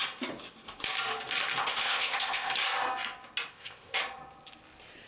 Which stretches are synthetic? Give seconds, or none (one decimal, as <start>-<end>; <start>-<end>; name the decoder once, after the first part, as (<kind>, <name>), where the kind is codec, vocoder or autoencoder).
1.6-2.5 (codec, ZipCodec); 3.5-4.0